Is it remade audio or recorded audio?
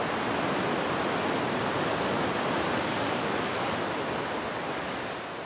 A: recorded